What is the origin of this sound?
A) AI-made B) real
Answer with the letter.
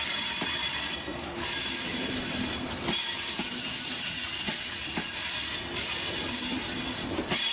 B